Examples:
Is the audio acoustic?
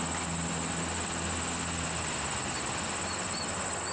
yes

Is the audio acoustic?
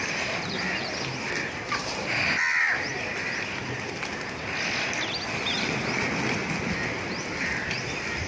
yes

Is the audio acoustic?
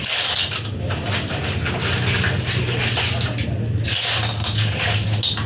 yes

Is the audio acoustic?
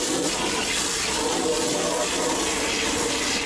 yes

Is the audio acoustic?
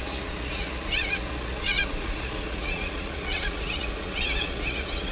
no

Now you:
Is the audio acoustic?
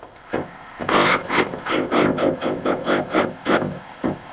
no